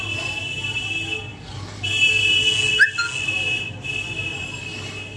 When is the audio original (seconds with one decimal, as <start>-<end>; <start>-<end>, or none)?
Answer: 0.0-5.2